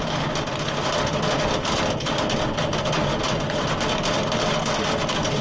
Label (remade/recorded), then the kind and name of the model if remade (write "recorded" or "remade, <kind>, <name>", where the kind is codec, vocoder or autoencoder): recorded